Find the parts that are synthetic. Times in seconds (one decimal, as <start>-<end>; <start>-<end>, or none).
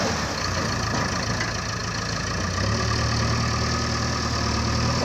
none